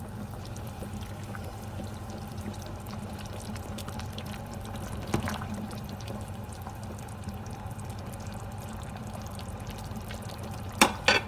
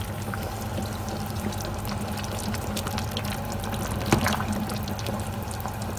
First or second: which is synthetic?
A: first